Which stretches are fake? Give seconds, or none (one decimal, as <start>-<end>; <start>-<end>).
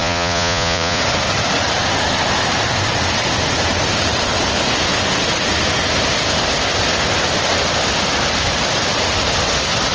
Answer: 0.0-1.0